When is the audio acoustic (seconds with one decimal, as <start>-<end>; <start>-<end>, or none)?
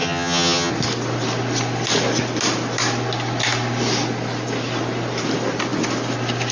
0.7-6.5